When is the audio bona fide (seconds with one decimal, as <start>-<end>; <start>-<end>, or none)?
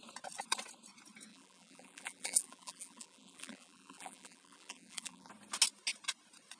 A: 0.0-1.3; 5.3-6.6